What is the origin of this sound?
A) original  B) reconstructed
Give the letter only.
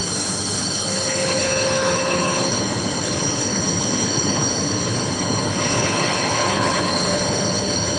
B